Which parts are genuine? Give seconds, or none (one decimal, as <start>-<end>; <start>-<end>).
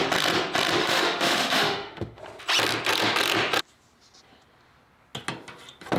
0.0-0.8; 2.2-6.0